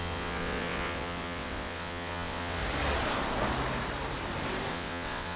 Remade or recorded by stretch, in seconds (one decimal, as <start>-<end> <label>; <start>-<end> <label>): 0.0-2.6 remade; 2.6-4.7 recorded; 4.7-5.4 remade

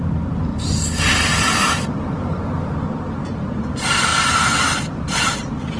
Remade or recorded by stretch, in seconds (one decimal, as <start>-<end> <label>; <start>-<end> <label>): 0.0-5.8 recorded